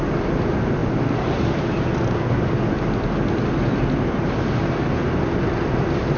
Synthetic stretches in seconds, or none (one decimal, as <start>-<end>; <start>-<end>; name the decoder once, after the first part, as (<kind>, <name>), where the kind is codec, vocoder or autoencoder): 0.8-1.5 (vocoder, BigVGAN v2)